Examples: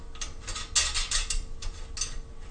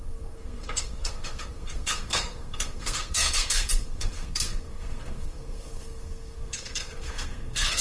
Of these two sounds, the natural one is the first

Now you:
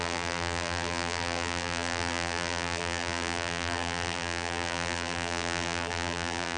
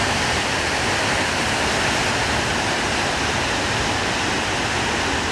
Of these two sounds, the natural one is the second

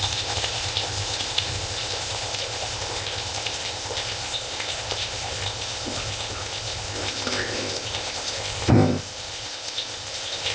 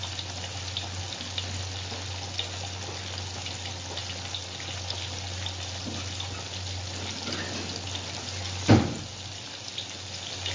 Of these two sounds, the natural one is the second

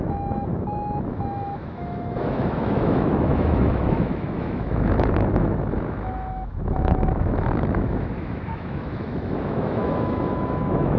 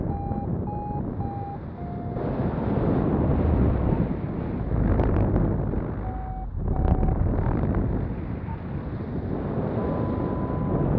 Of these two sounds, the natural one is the second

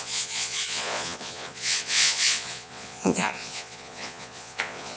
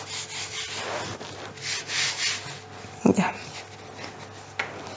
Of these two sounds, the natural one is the second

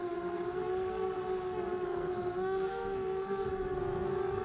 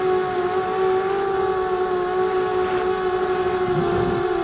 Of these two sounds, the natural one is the second